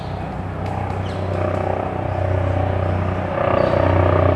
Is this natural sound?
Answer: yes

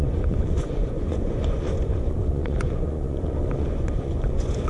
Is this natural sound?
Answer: no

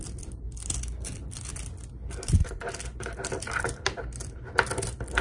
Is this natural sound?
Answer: yes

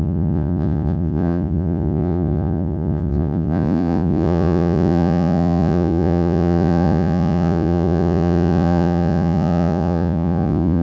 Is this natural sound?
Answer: no